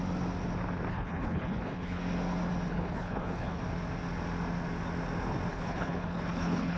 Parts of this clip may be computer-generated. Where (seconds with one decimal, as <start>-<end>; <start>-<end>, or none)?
0.9-2.0; 2.7-3.6; 5.5-6.8